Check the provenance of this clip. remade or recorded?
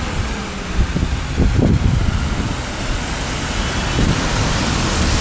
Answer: recorded